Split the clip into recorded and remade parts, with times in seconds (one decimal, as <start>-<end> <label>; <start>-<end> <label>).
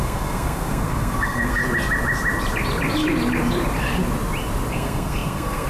0.0-1.6 remade; 1.6-4.7 recorded; 4.7-5.7 remade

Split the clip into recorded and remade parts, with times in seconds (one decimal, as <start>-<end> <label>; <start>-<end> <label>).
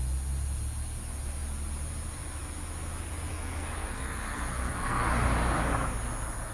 0.0-3.3 recorded; 3.3-5.1 remade; 5.1-6.5 recorded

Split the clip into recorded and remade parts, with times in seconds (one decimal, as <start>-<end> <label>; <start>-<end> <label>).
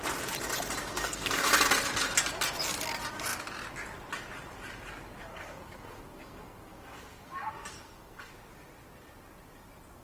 0.0-0.8 recorded; 0.8-1.4 remade; 1.4-5.3 recorded; 5.3-8.3 remade; 8.3-10.0 recorded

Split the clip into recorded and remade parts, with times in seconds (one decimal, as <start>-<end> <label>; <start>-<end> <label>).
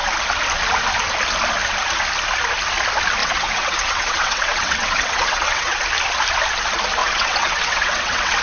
0.0-3.2 recorded; 3.2-5.8 remade; 5.8-7.0 recorded; 7.0-8.4 remade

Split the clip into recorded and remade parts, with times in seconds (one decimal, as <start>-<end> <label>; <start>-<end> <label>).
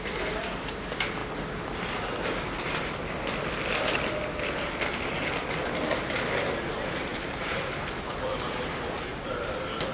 0.0-7.1 recorded; 7.1-8.7 remade; 8.7-9.9 recorded